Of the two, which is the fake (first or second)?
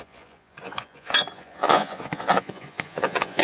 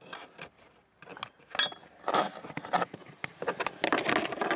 first